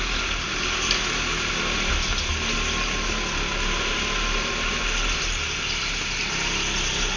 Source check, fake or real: real